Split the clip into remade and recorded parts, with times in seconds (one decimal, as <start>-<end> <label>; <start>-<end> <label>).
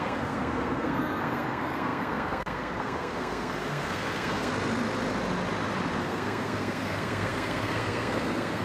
0.0-4.5 remade; 4.5-6.0 recorded; 6.0-8.6 remade